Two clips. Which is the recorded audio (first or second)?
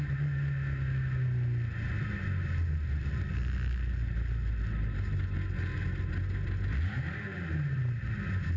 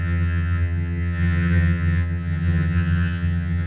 first